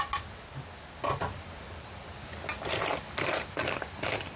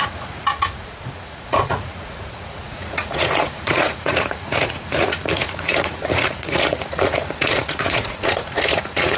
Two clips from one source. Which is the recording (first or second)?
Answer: first